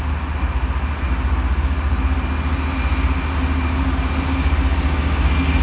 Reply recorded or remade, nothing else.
recorded